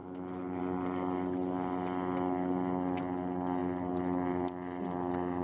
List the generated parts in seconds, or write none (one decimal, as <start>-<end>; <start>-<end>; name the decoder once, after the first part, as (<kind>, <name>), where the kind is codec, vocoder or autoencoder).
0.0-0.6 (autoencoder, DAC-VAE)

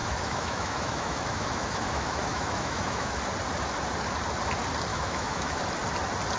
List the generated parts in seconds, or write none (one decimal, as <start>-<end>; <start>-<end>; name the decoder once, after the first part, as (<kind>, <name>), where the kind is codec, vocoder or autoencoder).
0.0-3.2 (autoencoder, DAC-VAE); 4.9-5.6

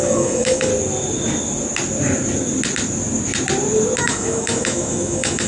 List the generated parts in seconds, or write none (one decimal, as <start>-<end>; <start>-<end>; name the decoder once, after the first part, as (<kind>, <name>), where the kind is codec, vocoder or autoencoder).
0.0-0.7 (autoencoder, DAC-VAE); 4.0-5.5

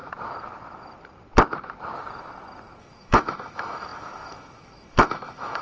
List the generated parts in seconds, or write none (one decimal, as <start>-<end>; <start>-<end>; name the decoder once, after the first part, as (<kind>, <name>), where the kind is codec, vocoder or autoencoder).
2.8-5.6 (autoencoder, DAC-VAE)

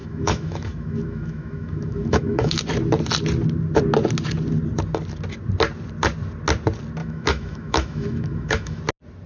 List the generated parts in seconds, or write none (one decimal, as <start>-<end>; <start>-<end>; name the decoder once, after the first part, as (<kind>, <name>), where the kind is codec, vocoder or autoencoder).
0.0-2.6 (autoencoder, DAC-VAE); 7.0-8.8